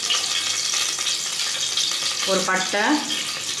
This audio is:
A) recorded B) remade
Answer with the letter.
A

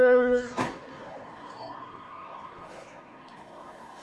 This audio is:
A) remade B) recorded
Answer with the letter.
A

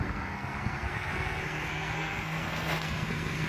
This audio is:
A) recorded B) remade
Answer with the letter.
B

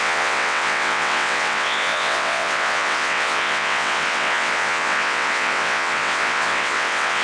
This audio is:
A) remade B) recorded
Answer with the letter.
A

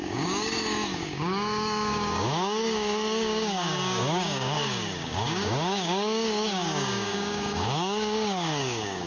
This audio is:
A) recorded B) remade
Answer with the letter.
B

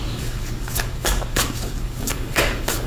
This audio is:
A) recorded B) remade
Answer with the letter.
B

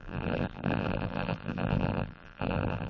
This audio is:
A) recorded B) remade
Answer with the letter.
B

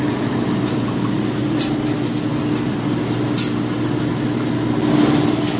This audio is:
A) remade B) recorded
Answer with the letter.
B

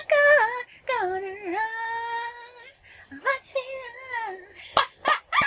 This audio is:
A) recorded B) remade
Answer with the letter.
A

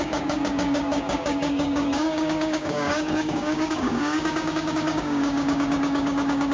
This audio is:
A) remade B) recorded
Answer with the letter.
A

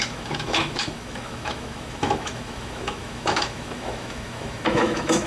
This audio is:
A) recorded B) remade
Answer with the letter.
B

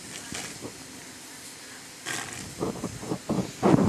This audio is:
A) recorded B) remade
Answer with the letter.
A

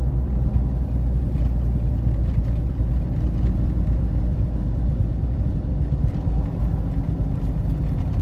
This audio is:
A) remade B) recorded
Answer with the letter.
B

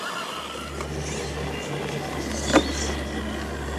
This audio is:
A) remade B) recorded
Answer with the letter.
B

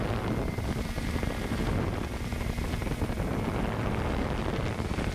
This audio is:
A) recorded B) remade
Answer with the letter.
A